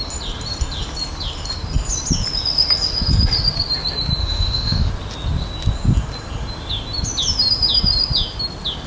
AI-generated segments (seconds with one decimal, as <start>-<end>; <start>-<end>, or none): 4.2-4.9